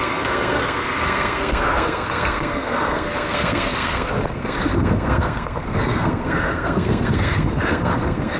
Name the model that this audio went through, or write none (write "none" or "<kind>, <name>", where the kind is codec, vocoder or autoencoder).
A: codec, SNAC